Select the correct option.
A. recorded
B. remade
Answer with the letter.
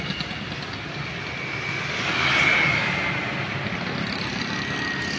A